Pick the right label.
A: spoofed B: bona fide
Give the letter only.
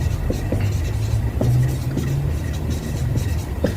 B